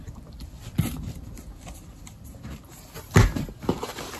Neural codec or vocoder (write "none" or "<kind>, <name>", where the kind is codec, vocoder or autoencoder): vocoder, BigVGAN v2